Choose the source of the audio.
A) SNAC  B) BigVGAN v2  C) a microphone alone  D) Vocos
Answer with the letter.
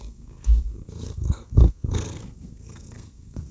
A